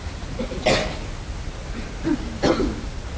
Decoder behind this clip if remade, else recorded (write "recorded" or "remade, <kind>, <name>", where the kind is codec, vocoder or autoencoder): recorded